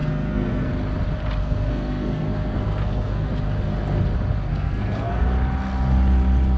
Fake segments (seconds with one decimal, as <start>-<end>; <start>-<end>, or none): 0.0-0.7; 1.4-3.3; 4.5-5.2